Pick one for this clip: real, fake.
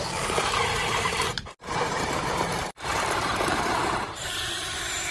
fake